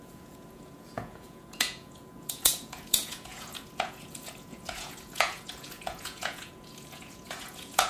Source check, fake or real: fake